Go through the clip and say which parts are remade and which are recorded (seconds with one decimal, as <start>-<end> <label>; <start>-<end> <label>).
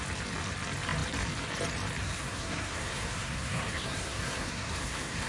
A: 0.0-2.0 recorded; 2.0-5.3 remade